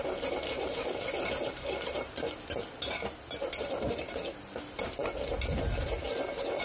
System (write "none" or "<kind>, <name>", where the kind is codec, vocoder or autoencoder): none